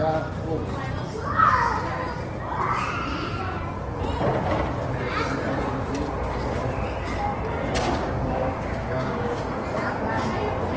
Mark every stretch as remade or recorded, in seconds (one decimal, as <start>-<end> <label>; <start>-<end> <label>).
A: 0.0-8.0 recorded; 8.0-9.4 remade; 9.4-10.8 recorded